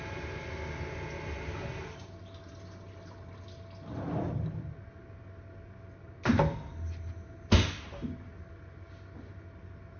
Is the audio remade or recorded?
recorded